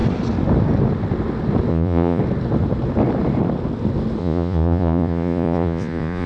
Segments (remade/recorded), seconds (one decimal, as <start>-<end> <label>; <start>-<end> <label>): 0.0-1.7 recorded; 1.7-2.2 remade; 2.2-4.2 recorded; 4.2-6.3 remade